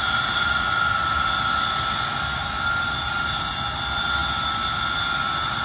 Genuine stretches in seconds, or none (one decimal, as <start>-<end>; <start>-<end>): 0.0-5.6